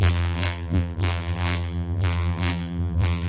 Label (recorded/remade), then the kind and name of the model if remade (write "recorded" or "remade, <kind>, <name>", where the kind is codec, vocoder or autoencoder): remade, vocoder, BigVGAN v2